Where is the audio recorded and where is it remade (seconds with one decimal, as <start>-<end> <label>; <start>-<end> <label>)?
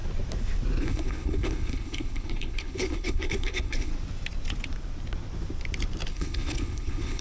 0.0-0.8 recorded; 0.8-3.9 remade; 3.9-6.1 recorded; 6.1-7.2 remade